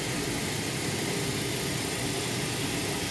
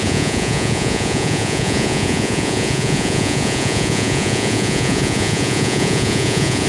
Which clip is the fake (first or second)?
second